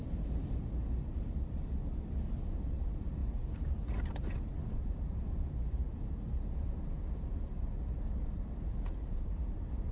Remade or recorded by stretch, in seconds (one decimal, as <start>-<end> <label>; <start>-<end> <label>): 0.0-9.9 remade